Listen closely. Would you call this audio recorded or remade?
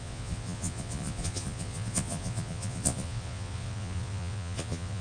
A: remade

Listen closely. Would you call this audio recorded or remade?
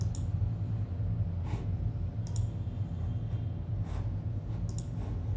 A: recorded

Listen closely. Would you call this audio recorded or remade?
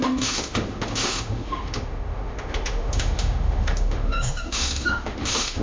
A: remade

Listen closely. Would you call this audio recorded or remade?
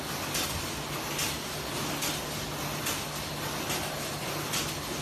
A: recorded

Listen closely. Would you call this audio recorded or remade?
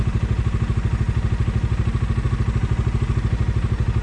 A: recorded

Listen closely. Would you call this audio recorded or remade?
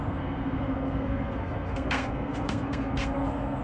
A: remade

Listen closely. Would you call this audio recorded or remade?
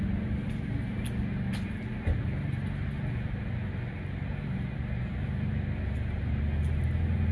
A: recorded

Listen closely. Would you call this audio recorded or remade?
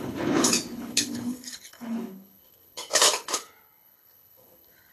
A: remade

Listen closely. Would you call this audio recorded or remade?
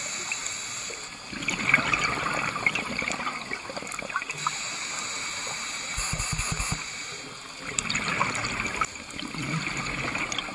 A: recorded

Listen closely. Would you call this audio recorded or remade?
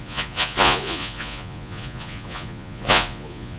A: remade